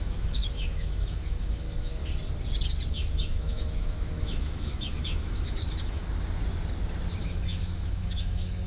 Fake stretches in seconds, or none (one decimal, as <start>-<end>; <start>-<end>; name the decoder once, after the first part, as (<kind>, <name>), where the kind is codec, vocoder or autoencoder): 0.0-2.0 (autoencoder, DAC-VAE); 2.9-6.0; 7.2-8.7

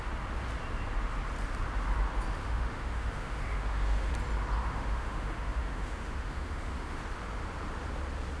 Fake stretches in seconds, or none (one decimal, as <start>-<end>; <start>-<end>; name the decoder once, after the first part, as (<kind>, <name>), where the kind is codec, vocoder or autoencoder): 2.4-4.1 (autoencoder, DAC-VAE); 4.6-7.0

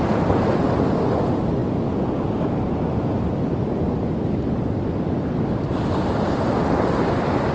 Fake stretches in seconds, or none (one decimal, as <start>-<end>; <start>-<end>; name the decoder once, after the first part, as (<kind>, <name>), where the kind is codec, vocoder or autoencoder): none

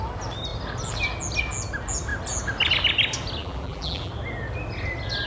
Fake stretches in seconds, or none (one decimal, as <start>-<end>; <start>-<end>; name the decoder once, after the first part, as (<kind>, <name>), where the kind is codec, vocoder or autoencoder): 3.4-4.1 (vocoder, BigVGAN v2)

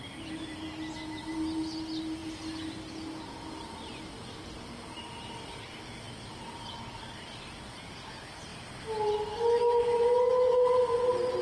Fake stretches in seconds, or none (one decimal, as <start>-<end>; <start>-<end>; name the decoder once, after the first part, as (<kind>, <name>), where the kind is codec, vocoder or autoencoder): none

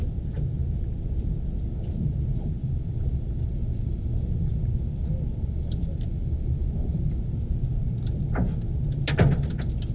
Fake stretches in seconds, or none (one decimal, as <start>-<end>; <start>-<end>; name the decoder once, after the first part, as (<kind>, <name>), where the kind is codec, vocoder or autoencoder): 2.6-7.4 (vocoder, BigVGAN v2)

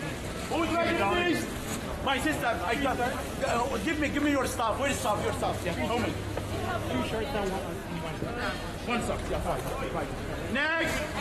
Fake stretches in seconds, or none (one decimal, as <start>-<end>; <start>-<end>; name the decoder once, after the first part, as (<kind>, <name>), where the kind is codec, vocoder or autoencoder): 5.5-6.9 (autoencoder, DAC-VAE)